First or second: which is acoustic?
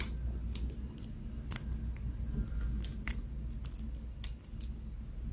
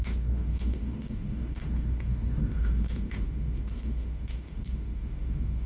first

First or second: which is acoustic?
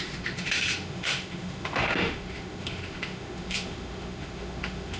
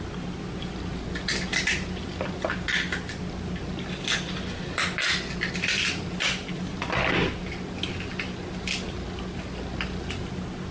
second